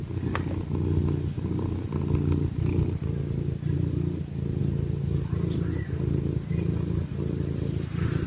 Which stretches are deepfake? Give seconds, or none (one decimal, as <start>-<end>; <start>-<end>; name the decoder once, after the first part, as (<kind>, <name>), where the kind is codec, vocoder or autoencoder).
none